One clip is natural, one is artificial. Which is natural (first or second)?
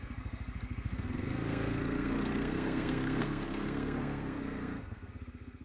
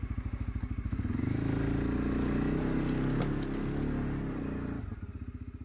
second